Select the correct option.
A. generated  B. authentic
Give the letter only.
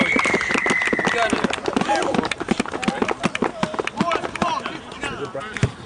B